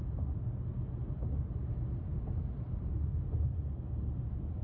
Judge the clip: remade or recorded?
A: recorded